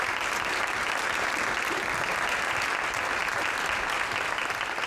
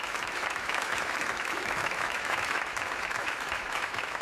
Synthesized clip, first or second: second